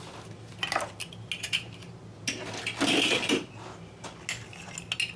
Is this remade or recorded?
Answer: recorded